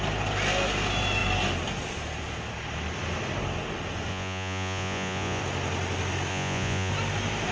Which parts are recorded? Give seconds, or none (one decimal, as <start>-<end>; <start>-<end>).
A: 0.0-4.1; 5.4-6.3; 6.9-7.5